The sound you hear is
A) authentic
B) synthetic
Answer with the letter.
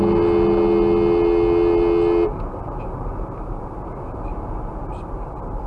A